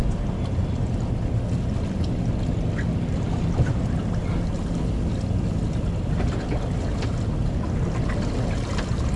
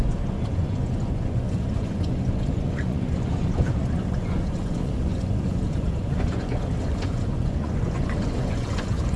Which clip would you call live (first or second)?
first